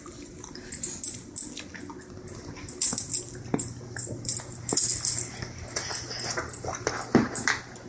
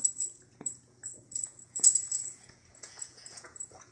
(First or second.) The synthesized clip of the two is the second